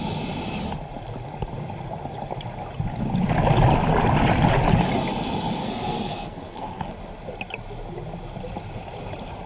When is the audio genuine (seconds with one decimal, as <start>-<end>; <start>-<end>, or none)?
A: 0.0-5.6; 6.8-9.5